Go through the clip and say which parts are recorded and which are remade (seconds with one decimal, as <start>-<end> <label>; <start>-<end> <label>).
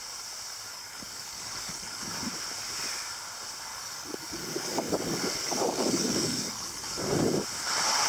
0.0-0.7 recorded; 0.7-2.1 remade; 2.1-3.7 recorded; 3.7-7.0 remade; 7.0-8.1 recorded